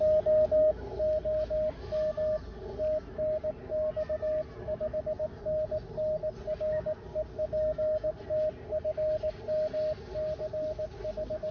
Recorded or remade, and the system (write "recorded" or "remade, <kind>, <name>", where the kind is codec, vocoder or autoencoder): recorded